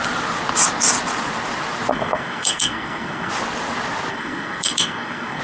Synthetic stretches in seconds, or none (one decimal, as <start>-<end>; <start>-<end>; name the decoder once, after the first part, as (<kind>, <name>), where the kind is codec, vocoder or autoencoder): 1.9-3.3 (codec, SNAC); 4.1-5.4